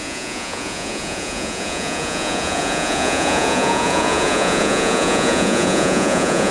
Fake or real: fake